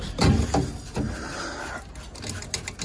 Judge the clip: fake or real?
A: real